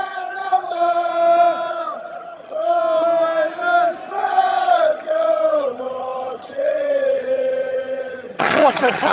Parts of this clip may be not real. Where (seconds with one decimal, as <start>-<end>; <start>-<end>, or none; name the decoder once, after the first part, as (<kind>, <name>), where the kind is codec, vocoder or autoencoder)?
0.0-1.1 (vocoder, HiFi-GAN); 1.7-2.8; 4.1-9.1